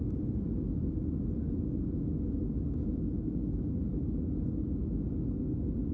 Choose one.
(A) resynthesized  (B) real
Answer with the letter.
B